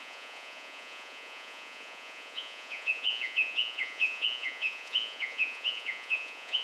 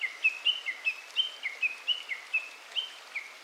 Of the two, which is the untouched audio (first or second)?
second